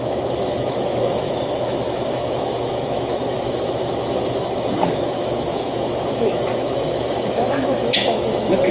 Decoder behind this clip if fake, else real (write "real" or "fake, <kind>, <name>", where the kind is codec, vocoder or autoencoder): fake, autoencoder, DAC-VAE